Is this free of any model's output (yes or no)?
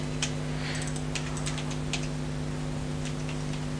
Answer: yes